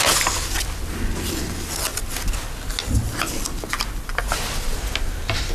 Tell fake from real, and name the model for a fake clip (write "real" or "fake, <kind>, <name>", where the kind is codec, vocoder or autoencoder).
real